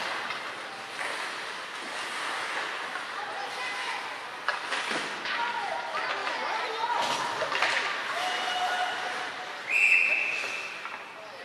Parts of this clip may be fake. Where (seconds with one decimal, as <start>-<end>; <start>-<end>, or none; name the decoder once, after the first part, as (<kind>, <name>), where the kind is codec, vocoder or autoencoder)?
none

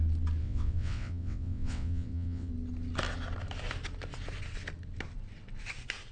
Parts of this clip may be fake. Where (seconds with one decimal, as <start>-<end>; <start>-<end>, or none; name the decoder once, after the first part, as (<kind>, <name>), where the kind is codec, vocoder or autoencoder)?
0.4-2.5 (vocoder, WaveNeXt)